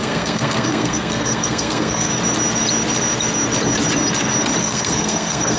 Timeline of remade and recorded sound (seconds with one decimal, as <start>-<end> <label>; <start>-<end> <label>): 0.0-2.1 remade; 2.1-4.6 recorded; 4.6-5.6 remade